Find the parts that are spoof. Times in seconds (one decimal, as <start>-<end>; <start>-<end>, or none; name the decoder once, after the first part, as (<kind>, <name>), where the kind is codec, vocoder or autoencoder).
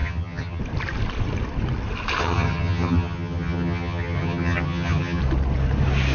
0.0-0.6 (vocoder, HiFi-GAN); 2.2-5.2